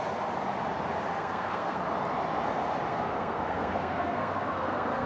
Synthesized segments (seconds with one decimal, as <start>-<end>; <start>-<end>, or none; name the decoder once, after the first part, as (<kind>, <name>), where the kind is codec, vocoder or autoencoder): 1.1-1.8 (codec, SNAC); 2.9-5.1